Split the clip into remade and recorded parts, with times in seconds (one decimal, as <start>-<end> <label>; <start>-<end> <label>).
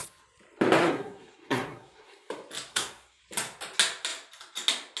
0.0-0.8 recorded; 0.8-2.3 remade; 2.3-2.7 recorded; 2.7-3.2 remade; 3.2-5.0 recorded